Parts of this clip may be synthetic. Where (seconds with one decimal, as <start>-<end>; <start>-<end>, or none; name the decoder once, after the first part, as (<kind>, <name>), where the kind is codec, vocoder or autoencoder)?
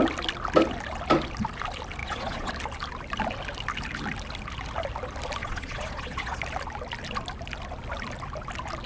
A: 2.0-2.5 (vocoder, Vocos); 5.4-6.4